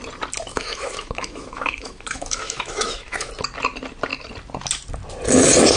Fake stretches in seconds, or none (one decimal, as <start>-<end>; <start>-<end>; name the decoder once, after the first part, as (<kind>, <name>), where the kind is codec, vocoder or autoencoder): 0.5-3.3 (autoencoder, DAC-VAE)